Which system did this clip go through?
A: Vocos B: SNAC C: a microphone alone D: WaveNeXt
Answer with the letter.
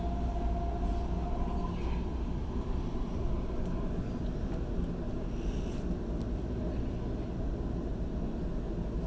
C